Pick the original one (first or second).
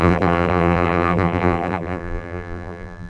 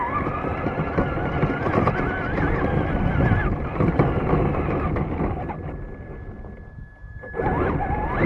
second